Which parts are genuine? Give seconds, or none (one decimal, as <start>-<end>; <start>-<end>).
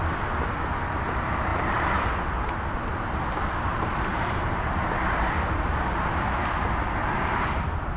0.0-1.5; 2.3-3.7; 5.7-7.0; 7.5-8.0